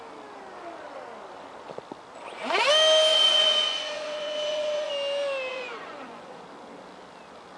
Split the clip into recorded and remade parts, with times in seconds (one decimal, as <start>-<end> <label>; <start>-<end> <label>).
0.0-3.1 recorded; 3.1-4.9 remade; 4.9-5.5 recorded; 5.5-6.4 remade; 6.4-7.6 recorded